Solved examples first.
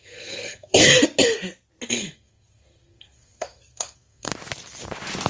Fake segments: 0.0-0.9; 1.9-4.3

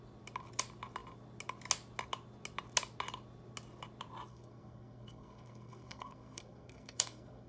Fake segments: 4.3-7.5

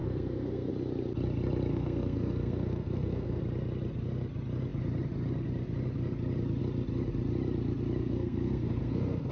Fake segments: 0.0-0.7; 1.7-3.4; 8.0-9.3